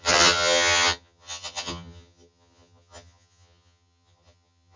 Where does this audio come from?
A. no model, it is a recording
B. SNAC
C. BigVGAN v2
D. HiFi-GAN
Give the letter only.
D